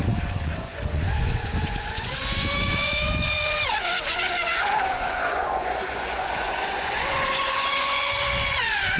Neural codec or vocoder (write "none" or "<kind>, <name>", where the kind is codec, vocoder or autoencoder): vocoder, Vocos